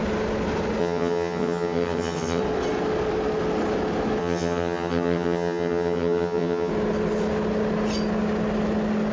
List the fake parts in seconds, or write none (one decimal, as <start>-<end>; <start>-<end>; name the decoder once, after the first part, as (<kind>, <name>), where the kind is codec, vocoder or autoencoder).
0.8-2.4 (vocoder, HiFi-GAN); 4.2-6.7